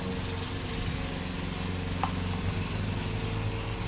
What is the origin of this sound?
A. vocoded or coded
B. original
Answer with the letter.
B